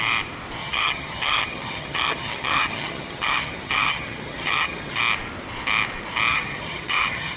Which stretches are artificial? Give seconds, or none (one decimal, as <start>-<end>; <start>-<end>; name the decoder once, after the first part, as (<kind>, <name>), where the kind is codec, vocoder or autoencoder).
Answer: 0.6-5.0 (vocoder, HiFi-GAN); 6.3-7.4